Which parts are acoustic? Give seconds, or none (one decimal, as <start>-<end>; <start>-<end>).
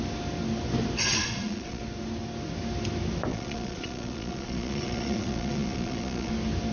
0.0-1.1; 1.8-3.3; 6.3-6.7